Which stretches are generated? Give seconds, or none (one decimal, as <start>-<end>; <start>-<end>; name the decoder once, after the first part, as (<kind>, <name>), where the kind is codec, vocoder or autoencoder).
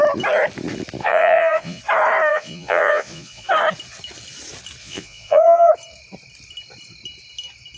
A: 1.0-1.8 (vocoder, Vocos); 2.3-3.5; 4.8-5.7